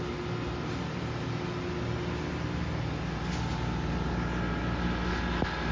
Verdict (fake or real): real